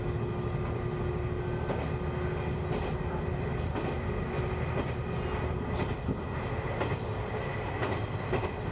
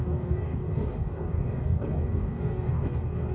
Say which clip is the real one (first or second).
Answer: first